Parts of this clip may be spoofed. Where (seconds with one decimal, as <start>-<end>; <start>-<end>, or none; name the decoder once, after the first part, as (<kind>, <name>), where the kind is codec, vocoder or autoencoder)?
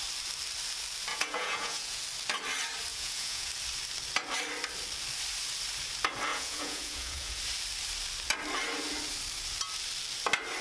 1.1-2.0 (vocoder, Vocos); 2.9-3.5; 6.3-7.4